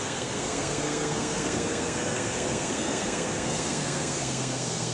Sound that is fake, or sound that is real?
fake